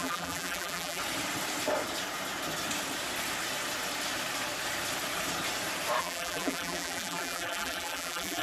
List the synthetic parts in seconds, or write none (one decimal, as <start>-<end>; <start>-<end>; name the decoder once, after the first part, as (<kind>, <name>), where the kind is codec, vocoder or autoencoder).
0.0-1.0 (vocoder, BigVGAN v2); 6.0-8.4